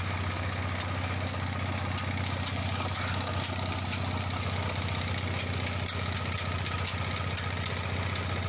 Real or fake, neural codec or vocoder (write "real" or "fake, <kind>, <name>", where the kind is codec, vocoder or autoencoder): real